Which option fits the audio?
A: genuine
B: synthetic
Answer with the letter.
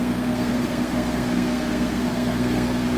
B